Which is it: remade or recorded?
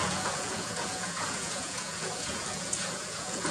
remade